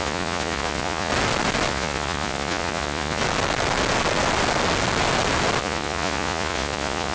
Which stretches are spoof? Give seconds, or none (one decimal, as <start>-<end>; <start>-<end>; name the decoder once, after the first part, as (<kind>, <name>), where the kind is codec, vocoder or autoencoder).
0.0-1.1 (vocoder, Vocos); 1.7-3.2; 5.6-7.1